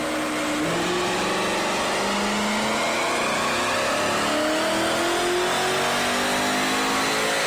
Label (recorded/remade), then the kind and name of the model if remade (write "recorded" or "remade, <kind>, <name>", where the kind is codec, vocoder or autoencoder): recorded